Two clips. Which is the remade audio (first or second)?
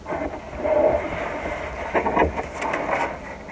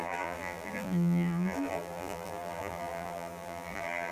second